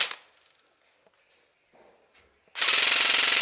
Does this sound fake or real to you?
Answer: real